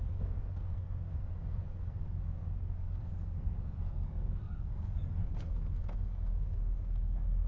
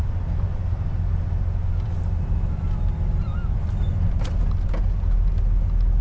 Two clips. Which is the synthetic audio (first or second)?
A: first